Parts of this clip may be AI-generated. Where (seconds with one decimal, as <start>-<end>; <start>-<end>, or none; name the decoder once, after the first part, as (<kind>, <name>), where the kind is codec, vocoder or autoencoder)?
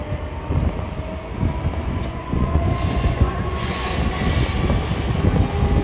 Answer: 1.7-3.9 (vocoder, Vocos)